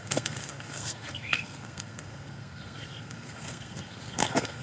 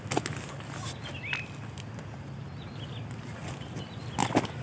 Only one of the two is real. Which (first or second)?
second